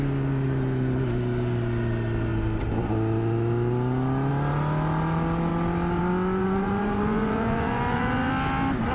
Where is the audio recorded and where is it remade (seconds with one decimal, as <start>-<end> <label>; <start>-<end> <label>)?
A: 0.0-6.4 recorded; 6.4-8.3 remade; 8.3-8.9 recorded